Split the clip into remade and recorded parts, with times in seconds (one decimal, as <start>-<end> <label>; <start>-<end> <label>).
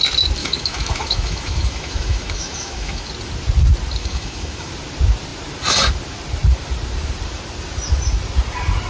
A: 0.0-0.4 recorded; 0.4-3.1 remade; 3.1-4.0 recorded; 4.0-4.7 remade; 4.7-8.9 recorded